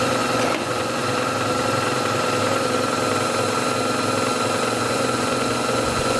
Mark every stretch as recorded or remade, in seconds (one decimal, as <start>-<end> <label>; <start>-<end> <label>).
0.0-1.0 remade; 1.0-4.6 recorded; 4.6-6.2 remade